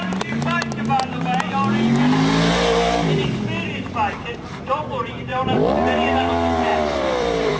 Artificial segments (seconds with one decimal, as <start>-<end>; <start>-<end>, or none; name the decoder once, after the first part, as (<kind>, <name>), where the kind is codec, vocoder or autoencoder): 5.3-6.3 (vocoder, BigVGAN v2); 6.7-7.6